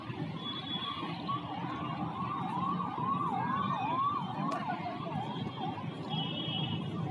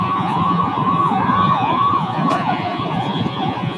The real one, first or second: first